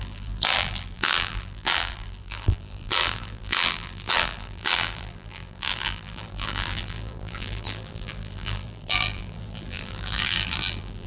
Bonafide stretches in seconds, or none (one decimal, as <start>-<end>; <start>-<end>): none